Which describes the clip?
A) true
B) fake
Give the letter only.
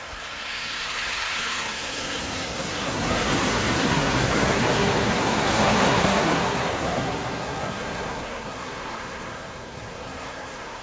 B